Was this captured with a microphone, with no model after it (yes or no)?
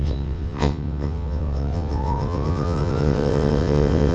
no